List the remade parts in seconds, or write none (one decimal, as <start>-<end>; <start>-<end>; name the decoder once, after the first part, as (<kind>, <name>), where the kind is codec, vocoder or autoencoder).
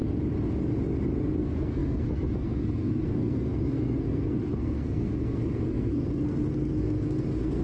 1.4-7.6 (codec, SNAC)